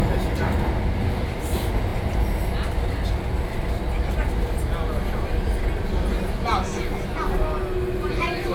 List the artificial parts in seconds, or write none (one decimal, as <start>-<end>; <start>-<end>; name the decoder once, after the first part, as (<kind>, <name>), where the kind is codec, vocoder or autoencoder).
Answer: none